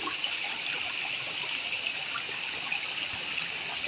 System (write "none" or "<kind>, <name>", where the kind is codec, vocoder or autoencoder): none